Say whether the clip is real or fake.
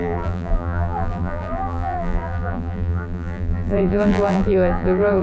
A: fake